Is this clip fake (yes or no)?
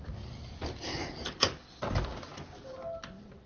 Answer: no